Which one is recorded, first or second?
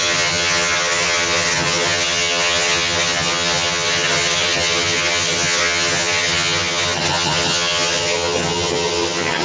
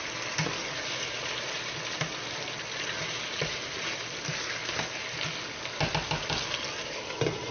second